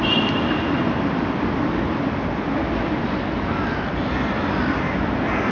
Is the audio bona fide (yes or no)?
yes